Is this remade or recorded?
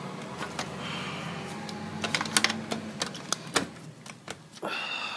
recorded